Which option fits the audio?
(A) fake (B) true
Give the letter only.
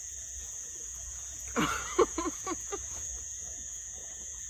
A